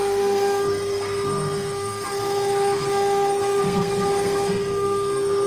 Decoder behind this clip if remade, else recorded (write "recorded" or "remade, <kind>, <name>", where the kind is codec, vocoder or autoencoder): remade, codec, SNAC